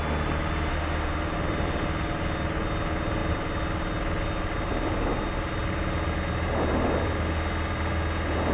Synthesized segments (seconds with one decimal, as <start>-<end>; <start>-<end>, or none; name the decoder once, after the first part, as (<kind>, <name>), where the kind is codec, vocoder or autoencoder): 0.7-1.3 (autoencoder, DAC-VAE)